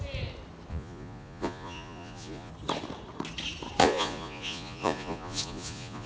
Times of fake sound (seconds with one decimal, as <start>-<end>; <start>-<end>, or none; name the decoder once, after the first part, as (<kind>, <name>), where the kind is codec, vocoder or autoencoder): 0.7-2.5 (vocoder, Vocos); 3.8-6.1